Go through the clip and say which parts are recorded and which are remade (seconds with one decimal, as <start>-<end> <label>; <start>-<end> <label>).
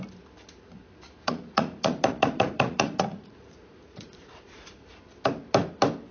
0.0-1.2 recorded; 1.2-4.9 remade; 4.9-6.1 recorded